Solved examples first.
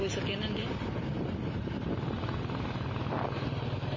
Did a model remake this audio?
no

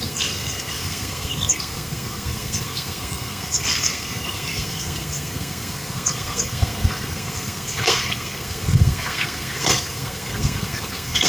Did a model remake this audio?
yes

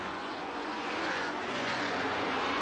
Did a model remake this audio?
yes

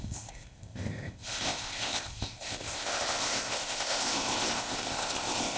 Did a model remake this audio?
yes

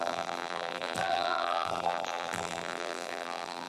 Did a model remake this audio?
yes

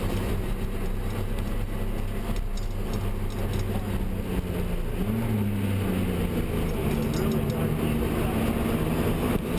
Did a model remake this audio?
no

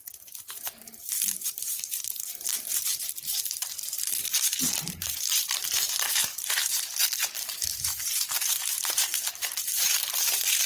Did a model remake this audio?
yes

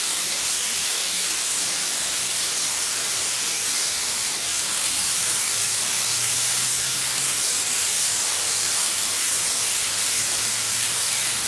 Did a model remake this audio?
yes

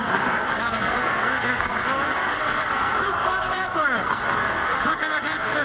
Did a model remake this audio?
yes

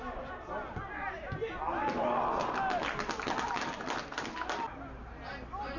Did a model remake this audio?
no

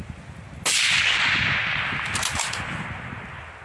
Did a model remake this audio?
no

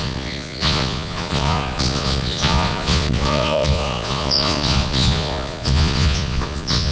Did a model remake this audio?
yes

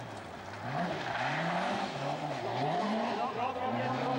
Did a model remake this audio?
no